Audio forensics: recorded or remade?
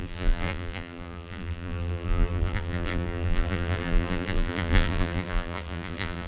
remade